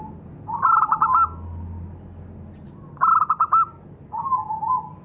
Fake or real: real